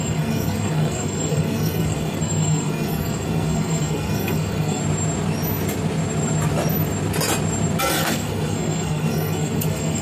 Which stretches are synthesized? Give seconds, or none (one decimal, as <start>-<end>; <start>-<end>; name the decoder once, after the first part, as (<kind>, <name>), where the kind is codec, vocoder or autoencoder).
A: 0.0-4.8 (codec, SNAC); 7.8-10.0